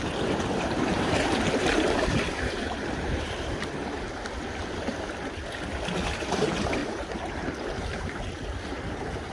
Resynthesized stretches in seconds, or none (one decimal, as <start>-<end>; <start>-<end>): 0.9-3.7; 6.8-8.4